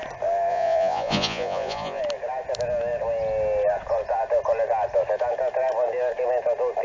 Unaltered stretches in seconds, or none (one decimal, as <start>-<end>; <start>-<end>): 0.0-0.5; 2.0-6.8